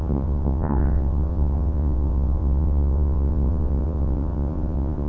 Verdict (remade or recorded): remade